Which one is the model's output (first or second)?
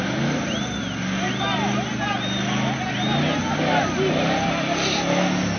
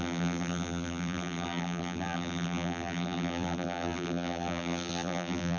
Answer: second